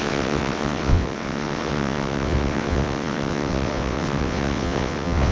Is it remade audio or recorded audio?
remade